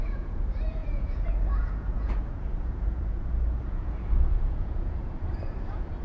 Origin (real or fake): fake